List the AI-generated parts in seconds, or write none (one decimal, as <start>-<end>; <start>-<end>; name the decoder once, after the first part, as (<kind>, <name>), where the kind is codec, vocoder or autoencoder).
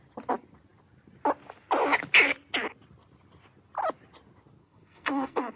4.6-5.6 (codec, SNAC)